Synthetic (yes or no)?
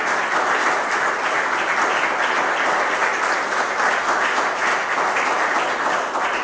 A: no